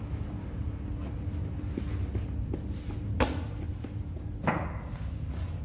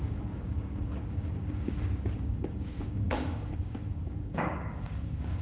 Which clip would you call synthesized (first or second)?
second